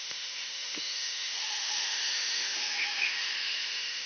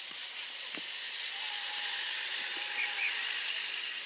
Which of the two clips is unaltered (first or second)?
second